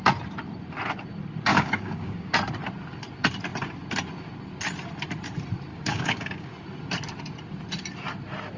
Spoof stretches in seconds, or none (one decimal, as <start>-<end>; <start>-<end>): 1.5-2.3; 5.7-6.5